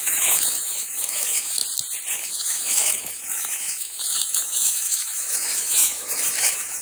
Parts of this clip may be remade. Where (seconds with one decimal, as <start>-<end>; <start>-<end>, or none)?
0.0-1.6; 2.1-6.8